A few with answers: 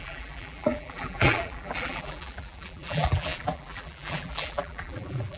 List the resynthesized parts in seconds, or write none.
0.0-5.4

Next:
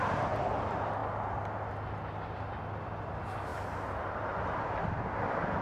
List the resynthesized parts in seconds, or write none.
none

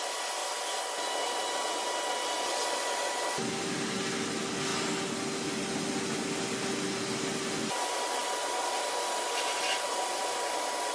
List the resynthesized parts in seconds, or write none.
4.7-6.7; 8.2-10.9

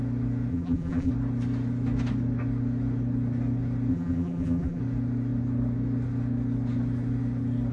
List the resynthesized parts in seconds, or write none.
0.5-1.1; 3.9-4.8